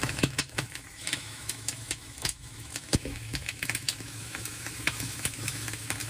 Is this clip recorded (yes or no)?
no